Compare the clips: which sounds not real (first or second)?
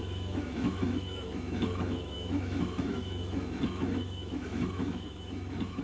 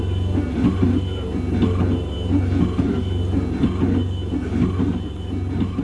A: first